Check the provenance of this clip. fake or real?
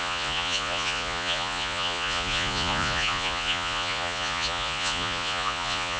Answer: fake